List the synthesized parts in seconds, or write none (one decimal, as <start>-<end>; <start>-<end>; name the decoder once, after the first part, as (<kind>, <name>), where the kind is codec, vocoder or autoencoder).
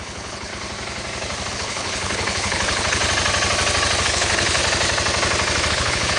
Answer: 0.0-0.5 (codec, HILCodec); 1.5-3.0; 4.0-4.6; 5.7-6.2